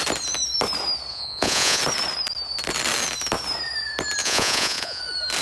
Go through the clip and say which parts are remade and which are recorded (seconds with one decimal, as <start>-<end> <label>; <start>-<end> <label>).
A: 0.0-1.1 recorded; 1.1-1.8 remade; 1.8-4.2 recorded; 4.2-5.0 remade; 5.0-5.4 recorded